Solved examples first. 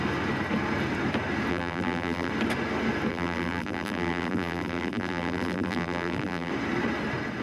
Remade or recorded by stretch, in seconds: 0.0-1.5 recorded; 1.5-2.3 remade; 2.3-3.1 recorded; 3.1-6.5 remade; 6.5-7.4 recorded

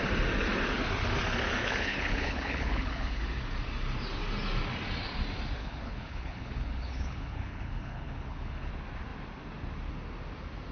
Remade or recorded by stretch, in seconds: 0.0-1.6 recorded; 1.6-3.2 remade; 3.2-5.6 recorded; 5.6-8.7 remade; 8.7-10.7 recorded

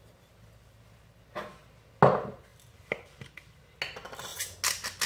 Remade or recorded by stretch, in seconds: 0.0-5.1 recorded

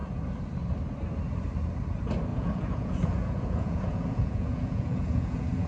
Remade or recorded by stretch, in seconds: 0.0-2.3 recorded; 2.3-5.7 remade

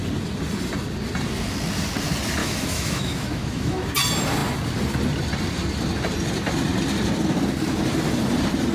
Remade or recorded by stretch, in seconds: 0.0-2.4 recorded; 2.4-3.8 remade; 3.8-8.7 recorded